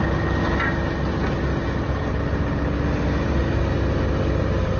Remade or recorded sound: recorded